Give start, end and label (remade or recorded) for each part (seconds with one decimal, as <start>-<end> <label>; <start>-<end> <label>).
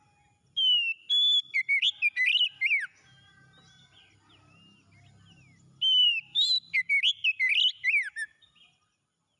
0.0-6.0 recorded; 6.0-6.7 remade; 6.7-9.4 recorded